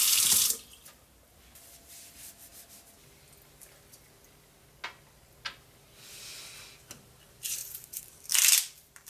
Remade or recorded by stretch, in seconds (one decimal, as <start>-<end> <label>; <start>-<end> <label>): 0.0-2.5 remade; 2.5-6.6 recorded; 6.6-9.1 remade